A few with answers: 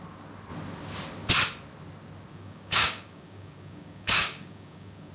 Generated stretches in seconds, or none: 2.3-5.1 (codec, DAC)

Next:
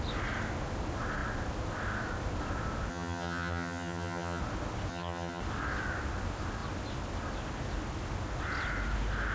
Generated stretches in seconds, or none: 2.9-4.4 (vocoder, HiFi-GAN); 4.9-5.4

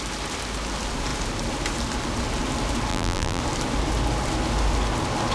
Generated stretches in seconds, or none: 2.9-3.4 (vocoder, BigVGAN v2)

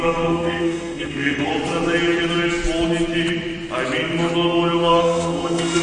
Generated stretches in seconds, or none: 0.0-1.5 (codec, SNAC); 5.0-5.8

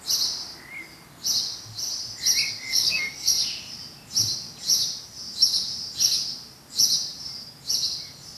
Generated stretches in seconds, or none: 2.7-3.3 (codec, SNAC)

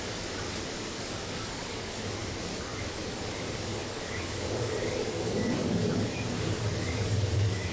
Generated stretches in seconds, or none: 0.0-7.7 (codec, DAC)